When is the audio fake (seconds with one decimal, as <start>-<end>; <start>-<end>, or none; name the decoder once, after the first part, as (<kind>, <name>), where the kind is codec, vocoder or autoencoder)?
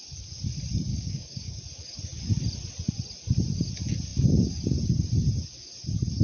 0.9-1.6 (codec, DAC)